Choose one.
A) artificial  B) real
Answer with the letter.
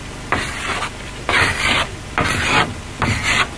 A